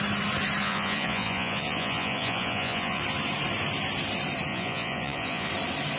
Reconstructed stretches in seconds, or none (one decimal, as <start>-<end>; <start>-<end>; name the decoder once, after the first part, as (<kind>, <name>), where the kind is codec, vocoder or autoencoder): 0.6-3.0 (vocoder, Vocos); 4.5-5.5